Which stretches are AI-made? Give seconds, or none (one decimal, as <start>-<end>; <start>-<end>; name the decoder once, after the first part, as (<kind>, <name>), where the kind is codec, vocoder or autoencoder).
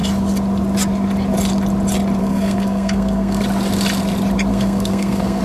2.2-3.4 (codec, SNAC); 4.5-5.4